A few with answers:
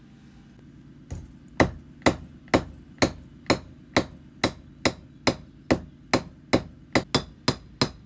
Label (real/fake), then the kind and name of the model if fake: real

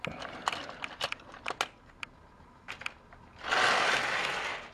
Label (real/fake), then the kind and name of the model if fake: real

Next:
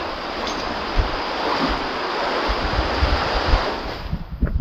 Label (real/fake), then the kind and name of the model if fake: fake, vocoder, BigVGAN v2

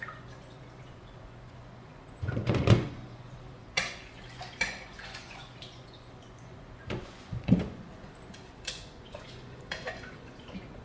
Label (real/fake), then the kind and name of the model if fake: fake, vocoder, Vocos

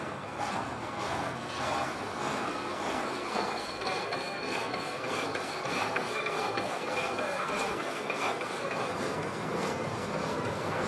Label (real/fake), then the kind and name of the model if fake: fake, codec, SNAC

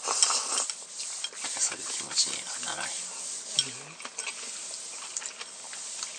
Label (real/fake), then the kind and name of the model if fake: real